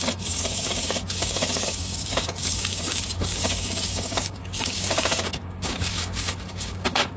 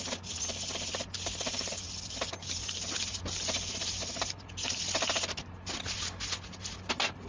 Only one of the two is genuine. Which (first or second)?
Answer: second